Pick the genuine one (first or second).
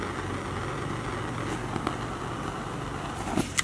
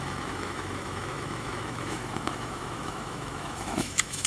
first